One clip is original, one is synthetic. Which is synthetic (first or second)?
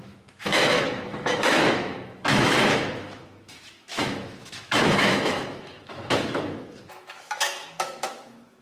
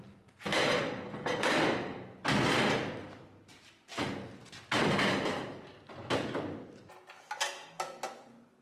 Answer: first